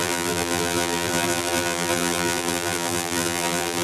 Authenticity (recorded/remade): remade